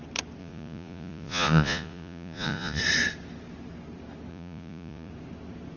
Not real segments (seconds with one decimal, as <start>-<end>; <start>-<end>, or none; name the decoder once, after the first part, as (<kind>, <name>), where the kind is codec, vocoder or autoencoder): 0.4-2.8 (vocoder, Vocos); 4.3-5.1